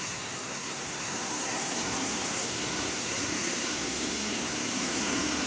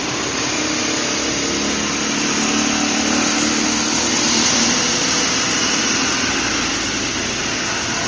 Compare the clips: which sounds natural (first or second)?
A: second